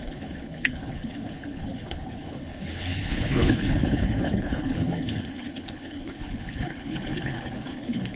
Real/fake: fake